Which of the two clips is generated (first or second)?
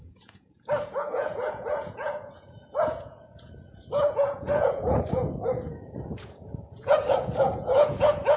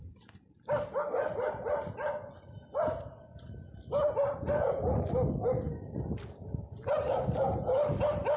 first